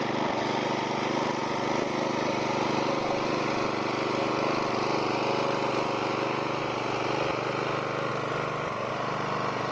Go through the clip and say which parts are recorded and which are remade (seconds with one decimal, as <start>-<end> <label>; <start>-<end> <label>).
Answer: 0.0-9.7 recorded